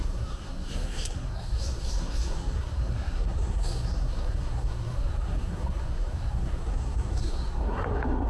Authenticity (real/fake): fake